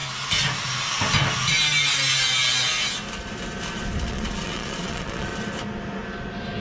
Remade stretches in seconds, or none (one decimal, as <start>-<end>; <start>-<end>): 4.0-5.3